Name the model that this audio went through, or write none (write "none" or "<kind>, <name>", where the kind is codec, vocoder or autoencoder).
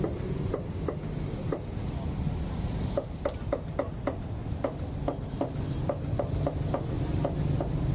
none